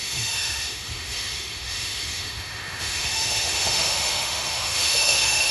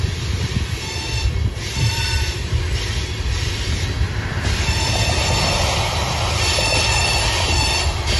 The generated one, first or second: first